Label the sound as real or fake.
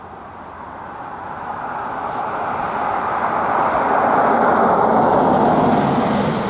real